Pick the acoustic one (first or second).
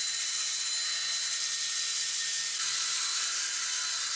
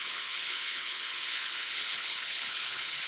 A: first